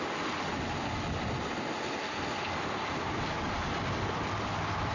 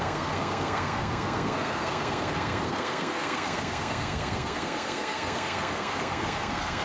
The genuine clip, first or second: first